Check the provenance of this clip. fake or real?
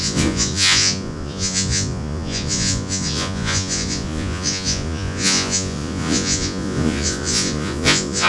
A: fake